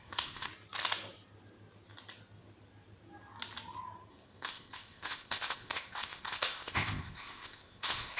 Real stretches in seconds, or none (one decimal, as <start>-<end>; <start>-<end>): 0.5-4.1